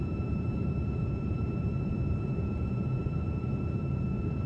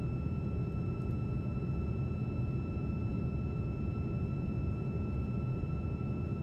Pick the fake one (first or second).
first